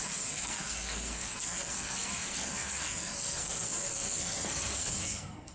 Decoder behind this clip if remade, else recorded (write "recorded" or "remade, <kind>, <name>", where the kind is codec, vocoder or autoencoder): remade, codec, SNAC